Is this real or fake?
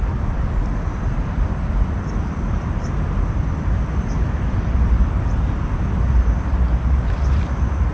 fake